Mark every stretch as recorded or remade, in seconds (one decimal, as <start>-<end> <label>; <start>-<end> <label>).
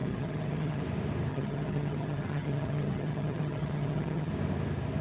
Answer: 0.0-0.8 remade; 0.8-1.3 recorded; 1.3-4.3 remade; 4.3-5.0 recorded